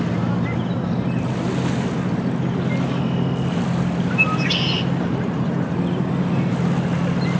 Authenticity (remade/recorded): recorded